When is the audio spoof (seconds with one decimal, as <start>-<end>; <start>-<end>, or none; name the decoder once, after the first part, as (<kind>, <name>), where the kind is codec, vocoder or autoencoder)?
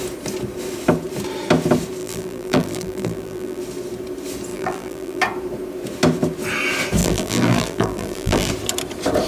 2.0-3.6 (vocoder, BigVGAN v2); 4.5-5.2; 7.0-8.5